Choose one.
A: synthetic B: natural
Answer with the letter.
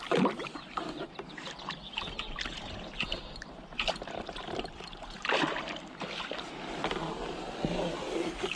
B